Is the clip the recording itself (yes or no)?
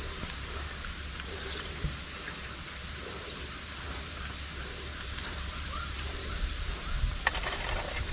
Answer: no